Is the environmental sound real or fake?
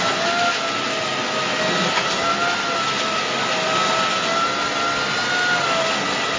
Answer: real